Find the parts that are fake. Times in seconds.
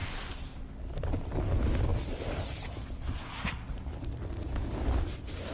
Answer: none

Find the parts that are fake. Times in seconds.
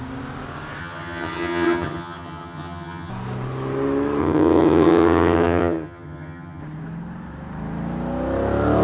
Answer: 0.8-3.1 (vocoder, HiFi-GAN); 4.2-6.6